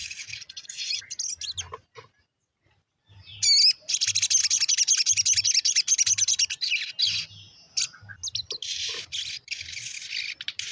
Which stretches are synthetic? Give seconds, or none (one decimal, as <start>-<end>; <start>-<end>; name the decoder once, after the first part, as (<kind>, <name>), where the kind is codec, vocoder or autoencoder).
0.0-1.0 (vocoder, Vocos)